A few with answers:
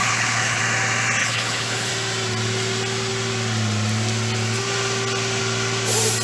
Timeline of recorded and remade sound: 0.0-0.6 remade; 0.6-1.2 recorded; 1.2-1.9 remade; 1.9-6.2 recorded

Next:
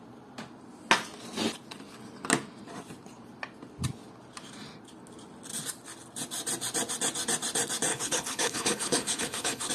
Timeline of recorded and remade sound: 0.0-7.9 recorded; 7.9-9.7 remade

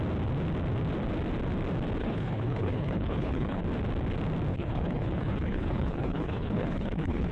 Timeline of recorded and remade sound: 0.0-2.0 recorded; 2.0-3.6 remade; 3.6-4.5 recorded; 4.5-7.3 remade

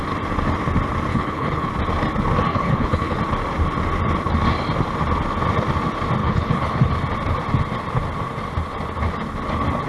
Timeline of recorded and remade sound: 0.0-1.1 recorded; 1.1-1.7 remade; 1.7-2.5 recorded; 2.5-3.2 remade; 3.2-6.2 recorded; 6.2-6.9 remade; 6.9-9.9 recorded

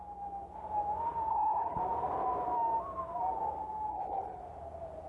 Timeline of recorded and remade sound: 0.0-1.3 recorded; 1.3-1.8 remade; 1.8-3.9 recorded; 3.9-4.4 remade; 4.4-5.1 recorded

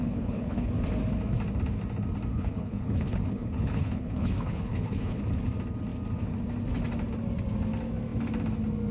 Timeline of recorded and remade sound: 0.0-0.7 remade; 0.7-2.3 recorded; 2.3-5.2 remade; 5.2-8.9 recorded

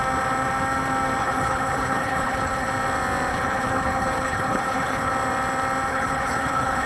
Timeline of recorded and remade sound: 0.0-1.2 recorded; 1.2-2.7 remade; 2.7-3.3 recorded; 3.3-5.1 remade; 5.1-5.9 recorded; 5.9-6.9 remade

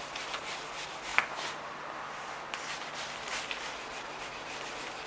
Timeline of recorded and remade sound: 0.0-5.1 recorded